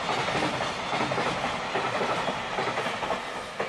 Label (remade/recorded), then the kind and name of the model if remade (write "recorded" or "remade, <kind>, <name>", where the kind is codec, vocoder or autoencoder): recorded